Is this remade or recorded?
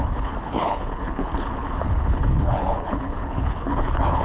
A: remade